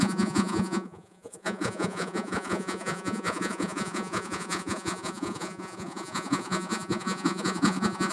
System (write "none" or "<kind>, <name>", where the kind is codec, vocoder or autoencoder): vocoder, Vocos